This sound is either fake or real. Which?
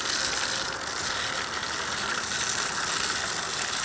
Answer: real